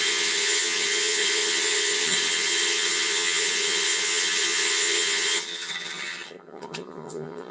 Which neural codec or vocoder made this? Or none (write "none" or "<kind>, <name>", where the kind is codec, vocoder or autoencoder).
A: vocoder, HiFi-GAN